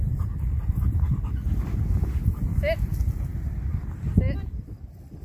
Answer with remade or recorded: recorded